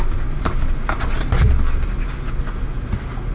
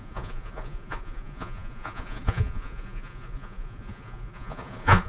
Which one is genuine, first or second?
first